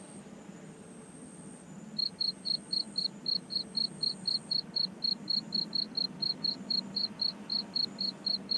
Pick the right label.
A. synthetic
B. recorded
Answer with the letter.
B